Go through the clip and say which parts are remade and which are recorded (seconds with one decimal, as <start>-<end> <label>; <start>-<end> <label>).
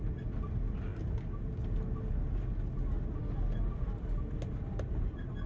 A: 0.0-5.5 recorded